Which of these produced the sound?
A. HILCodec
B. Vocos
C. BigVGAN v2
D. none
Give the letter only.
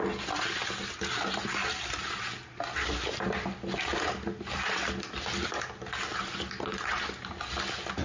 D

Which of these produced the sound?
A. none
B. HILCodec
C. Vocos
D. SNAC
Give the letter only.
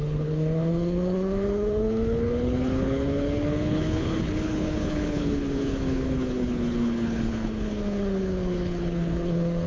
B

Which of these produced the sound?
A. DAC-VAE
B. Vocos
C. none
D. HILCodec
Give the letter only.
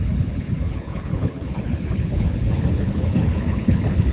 D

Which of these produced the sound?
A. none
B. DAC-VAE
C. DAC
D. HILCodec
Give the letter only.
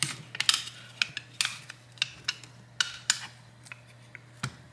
A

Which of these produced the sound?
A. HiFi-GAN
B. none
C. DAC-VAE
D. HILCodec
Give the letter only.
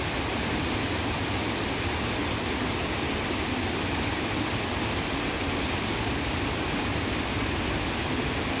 B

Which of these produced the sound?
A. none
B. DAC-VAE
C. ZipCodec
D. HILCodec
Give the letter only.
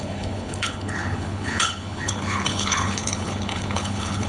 D